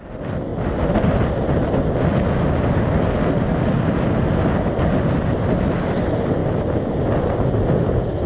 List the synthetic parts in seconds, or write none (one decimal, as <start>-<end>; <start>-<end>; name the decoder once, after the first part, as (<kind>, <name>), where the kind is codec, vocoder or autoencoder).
none